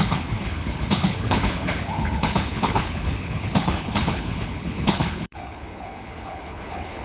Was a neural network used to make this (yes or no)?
yes